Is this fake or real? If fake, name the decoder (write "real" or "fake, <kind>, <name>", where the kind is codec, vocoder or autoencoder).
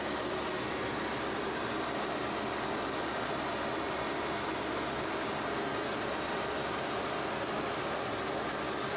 real